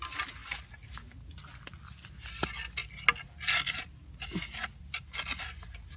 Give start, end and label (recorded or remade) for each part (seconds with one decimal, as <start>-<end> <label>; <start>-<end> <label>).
0.0-6.0 recorded

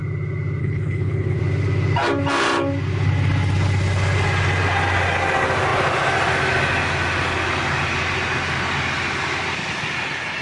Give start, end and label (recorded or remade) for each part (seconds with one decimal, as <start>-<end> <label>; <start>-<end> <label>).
0.0-0.6 recorded; 0.6-1.4 remade; 1.4-10.4 recorded

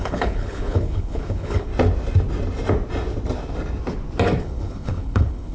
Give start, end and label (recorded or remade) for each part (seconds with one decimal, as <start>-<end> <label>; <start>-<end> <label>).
0.0-1.7 remade; 1.7-4.4 recorded; 4.4-5.5 remade

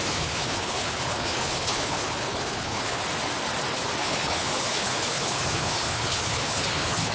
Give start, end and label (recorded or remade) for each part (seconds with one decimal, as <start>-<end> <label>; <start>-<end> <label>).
0.0-3.0 remade; 3.0-4.0 recorded; 4.0-7.1 remade